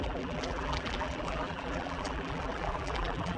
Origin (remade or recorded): remade